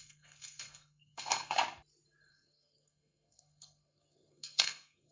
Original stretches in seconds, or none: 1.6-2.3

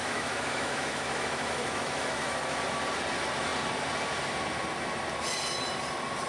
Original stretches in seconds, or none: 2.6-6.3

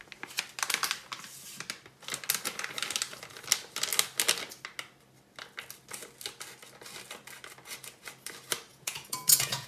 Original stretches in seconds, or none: 0.0-8.7

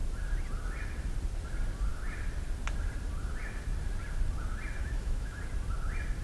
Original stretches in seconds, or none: 0.0-4.8; 5.4-6.2